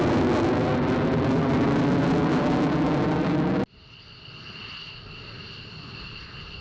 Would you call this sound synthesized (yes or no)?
no